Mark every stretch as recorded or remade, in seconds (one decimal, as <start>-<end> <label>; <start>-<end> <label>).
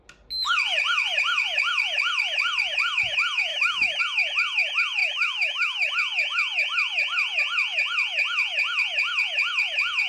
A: 0.0-3.5 recorded; 3.5-4.0 remade; 4.0-5.0 recorded; 5.0-5.9 remade; 5.9-10.1 recorded